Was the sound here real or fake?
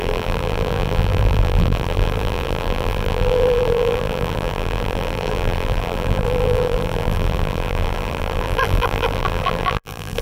fake